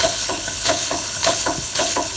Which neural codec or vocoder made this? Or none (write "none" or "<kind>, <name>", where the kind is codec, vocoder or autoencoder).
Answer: codec, HILCodec